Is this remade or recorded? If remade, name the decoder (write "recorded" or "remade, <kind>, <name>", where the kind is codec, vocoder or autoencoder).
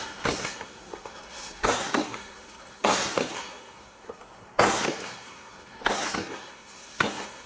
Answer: remade, codec, SNAC